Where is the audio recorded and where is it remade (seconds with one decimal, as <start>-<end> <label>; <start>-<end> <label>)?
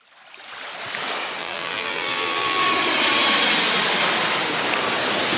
0.0-1.4 recorded; 1.4-2.6 remade; 2.6-5.4 recorded